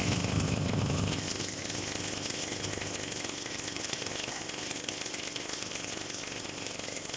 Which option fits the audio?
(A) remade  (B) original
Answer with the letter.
A